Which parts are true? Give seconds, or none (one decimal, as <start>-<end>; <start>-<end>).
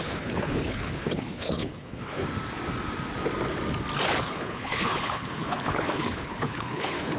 2.2-4.2